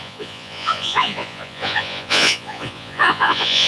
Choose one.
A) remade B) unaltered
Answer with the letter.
A